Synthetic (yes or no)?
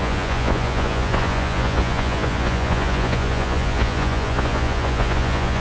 yes